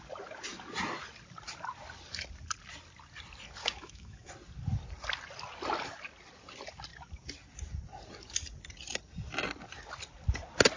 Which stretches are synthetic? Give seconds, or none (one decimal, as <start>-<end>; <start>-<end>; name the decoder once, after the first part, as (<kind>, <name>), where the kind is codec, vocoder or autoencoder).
3.6-4.3 (autoencoder, DAC-VAE)